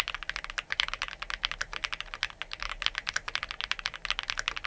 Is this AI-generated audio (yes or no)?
no